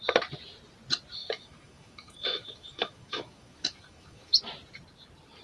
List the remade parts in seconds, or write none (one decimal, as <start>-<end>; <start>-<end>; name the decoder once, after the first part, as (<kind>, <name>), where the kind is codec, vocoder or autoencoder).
1.2-4.4 (autoencoder, DAC-VAE)